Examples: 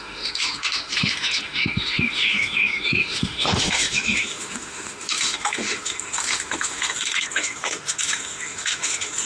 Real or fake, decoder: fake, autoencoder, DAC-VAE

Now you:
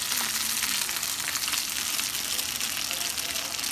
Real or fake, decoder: real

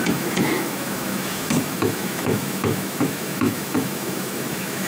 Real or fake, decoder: fake, autoencoder, DAC-VAE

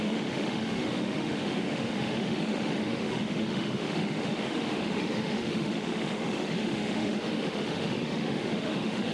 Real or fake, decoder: fake, autoencoder, DAC-VAE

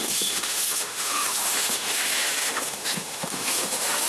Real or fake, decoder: fake, autoencoder, DAC-VAE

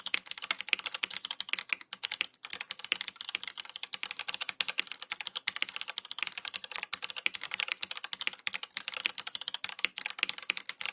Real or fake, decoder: real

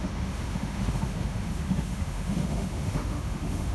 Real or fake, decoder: fake, autoencoder, DAC-VAE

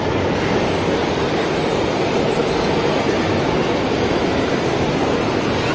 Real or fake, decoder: real